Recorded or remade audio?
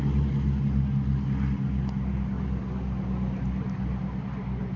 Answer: recorded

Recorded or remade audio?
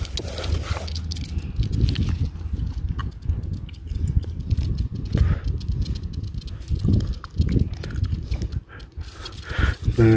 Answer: recorded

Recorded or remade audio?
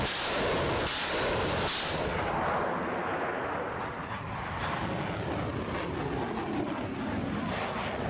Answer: recorded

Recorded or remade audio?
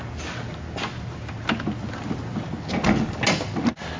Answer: recorded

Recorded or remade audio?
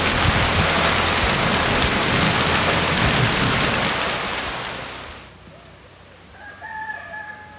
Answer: recorded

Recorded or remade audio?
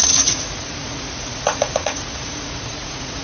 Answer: remade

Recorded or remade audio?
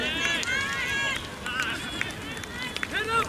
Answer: recorded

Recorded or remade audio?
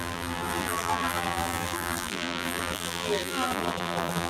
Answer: remade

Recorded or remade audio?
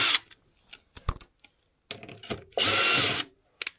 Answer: recorded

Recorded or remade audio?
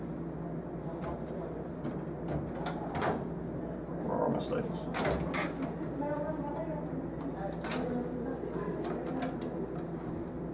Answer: recorded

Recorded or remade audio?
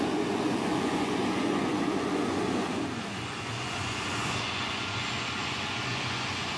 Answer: remade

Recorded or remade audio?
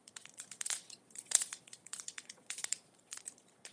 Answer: remade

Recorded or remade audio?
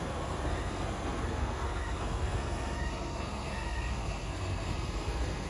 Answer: remade